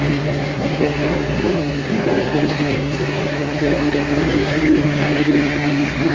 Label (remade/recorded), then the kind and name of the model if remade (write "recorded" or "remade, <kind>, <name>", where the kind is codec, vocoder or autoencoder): remade, codec, SNAC